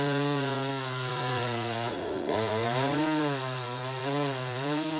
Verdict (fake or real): fake